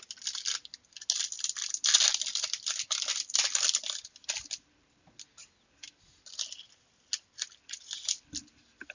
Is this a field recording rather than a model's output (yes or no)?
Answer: yes